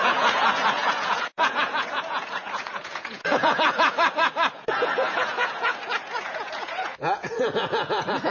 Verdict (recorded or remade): remade